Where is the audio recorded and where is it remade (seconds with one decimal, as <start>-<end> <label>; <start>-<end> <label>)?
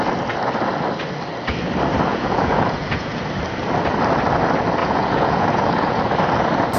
0.0-2.1 recorded; 2.1-3.2 remade; 3.2-4.8 recorded; 4.8-6.0 remade; 6.0-6.8 recorded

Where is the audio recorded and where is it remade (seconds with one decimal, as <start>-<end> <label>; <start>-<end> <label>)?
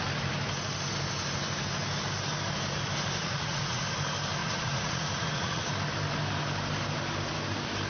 0.0-3.2 recorded; 3.2-3.8 remade; 3.8-4.4 recorded; 4.4-5.7 remade; 5.7-7.9 recorded